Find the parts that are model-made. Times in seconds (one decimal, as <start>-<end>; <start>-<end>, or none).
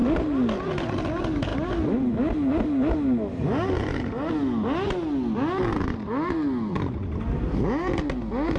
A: none